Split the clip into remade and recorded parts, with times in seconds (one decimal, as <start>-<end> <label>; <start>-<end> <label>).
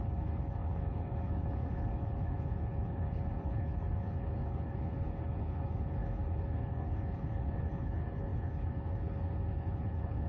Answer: 0.0-10.3 remade